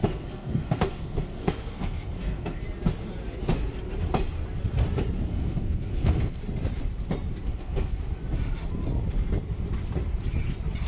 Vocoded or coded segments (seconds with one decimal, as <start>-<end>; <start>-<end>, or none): 0.0-2.6; 5.3-6.4; 7.5-8.0